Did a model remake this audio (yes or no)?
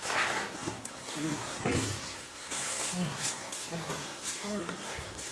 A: yes